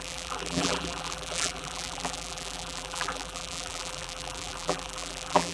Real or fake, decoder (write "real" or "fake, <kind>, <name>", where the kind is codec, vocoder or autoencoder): fake, vocoder, BigVGAN v2